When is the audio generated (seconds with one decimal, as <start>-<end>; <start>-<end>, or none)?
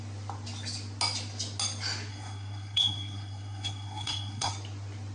2.1-4.5